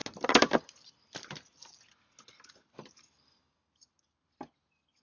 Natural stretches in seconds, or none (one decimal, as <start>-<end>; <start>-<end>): 0.0-5.0